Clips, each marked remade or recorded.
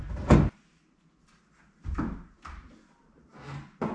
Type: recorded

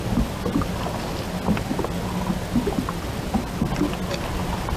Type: recorded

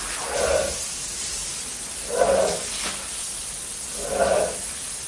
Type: recorded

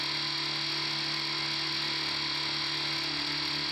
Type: recorded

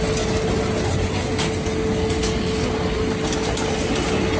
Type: recorded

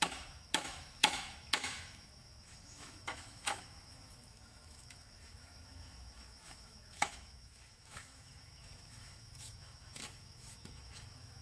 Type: remade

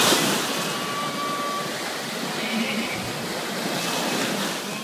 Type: recorded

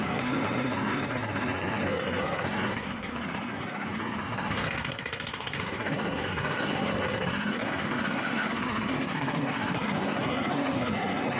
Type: remade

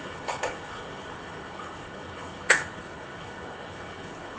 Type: remade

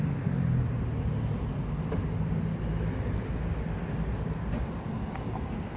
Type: recorded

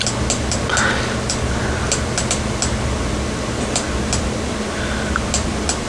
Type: recorded